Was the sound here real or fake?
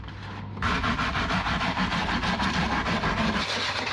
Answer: real